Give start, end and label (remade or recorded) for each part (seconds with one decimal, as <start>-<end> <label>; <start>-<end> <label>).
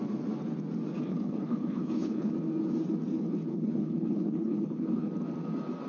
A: 0.0-1.1 recorded; 1.1-2.3 remade; 2.3-3.5 recorded; 3.5-5.1 remade; 5.1-5.9 recorded